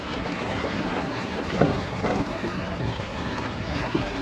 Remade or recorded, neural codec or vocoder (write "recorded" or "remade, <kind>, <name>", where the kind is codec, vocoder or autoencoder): remade, codec, SNAC